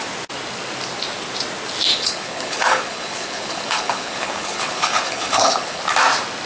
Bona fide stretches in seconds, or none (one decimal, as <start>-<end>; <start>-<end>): 0.0-1.9; 5.8-6.5